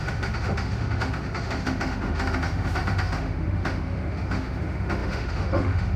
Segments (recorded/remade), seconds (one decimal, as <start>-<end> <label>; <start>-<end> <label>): 0.0-6.0 remade